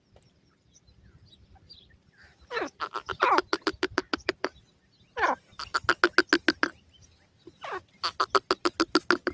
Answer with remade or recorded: recorded